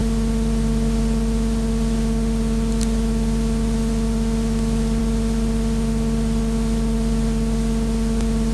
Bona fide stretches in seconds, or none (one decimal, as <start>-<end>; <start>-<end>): 0.0-8.5